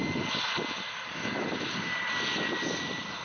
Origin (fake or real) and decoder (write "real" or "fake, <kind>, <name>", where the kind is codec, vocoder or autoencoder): real